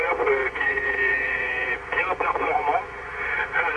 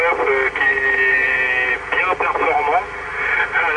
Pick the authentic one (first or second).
second